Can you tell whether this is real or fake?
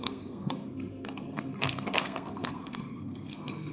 fake